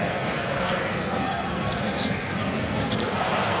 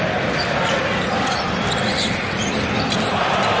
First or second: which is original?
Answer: second